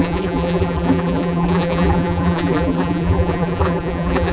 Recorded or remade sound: remade